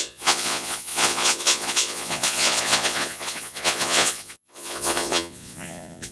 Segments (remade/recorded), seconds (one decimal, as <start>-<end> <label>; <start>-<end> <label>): 0.0-6.1 remade